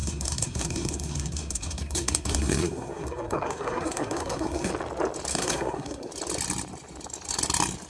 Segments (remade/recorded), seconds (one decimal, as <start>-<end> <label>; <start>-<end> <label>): 0.0-4.7 remade; 4.7-5.3 recorded; 5.3-6.1 remade; 6.1-7.9 recorded